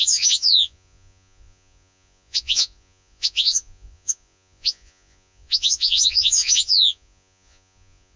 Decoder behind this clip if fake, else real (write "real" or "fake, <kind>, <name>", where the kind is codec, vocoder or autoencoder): fake, vocoder, Vocos